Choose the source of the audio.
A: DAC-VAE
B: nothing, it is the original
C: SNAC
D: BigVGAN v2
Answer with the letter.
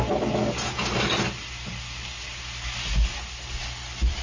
B